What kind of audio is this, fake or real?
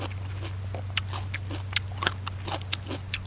real